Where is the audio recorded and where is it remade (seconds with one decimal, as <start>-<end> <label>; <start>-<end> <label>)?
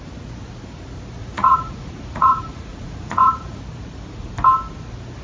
0.0-1.2 recorded; 1.2-3.6 remade; 3.6-5.2 recorded